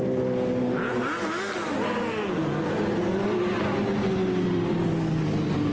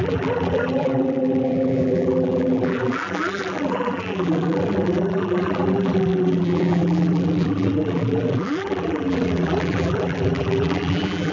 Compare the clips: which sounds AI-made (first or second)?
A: second